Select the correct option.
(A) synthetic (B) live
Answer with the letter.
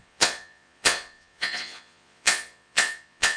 A